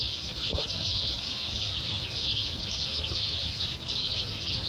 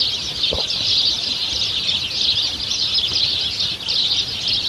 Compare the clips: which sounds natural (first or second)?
second